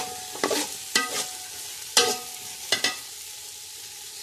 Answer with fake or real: real